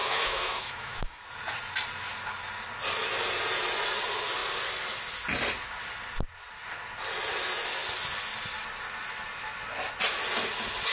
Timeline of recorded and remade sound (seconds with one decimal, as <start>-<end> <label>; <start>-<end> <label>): 0.0-1.2 remade; 1.2-10.9 recorded